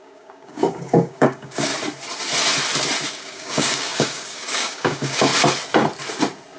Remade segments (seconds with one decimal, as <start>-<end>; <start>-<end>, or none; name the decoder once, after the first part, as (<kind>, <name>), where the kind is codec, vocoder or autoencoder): 0.0-1.7 (codec, DAC); 3.1-5.3